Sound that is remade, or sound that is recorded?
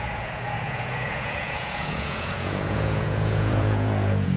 remade